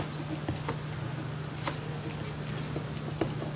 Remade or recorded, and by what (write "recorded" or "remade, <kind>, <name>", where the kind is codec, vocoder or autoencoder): recorded